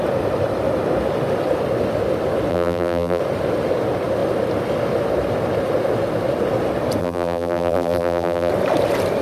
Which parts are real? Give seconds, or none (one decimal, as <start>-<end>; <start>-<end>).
0.0-2.5; 3.2-7.0; 8.5-9.2